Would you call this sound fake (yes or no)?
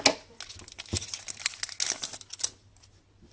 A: no